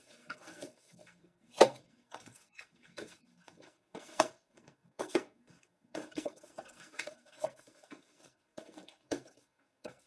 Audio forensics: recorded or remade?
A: remade